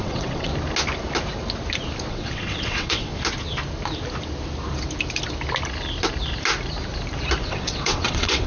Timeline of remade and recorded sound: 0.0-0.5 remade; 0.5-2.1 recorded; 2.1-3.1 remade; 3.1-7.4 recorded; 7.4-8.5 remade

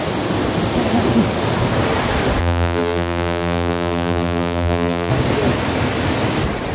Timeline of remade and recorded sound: 0.0-2.4 recorded; 2.4-5.1 remade; 5.1-6.7 recorded

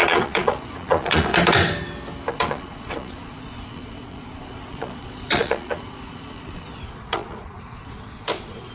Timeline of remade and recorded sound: 0.0-1.3 remade; 1.3-2.3 recorded; 2.3-8.7 remade

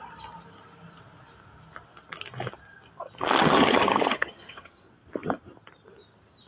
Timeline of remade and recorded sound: 0.0-3.4 recorded; 3.4-4.9 remade; 4.9-6.5 recorded